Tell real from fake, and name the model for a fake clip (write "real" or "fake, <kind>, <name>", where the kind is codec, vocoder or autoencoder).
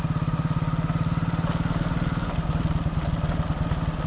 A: real